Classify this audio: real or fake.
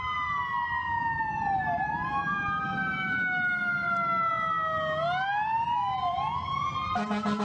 real